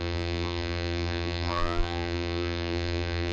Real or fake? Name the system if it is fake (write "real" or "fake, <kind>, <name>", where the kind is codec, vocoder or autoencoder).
fake, vocoder, BigVGAN v2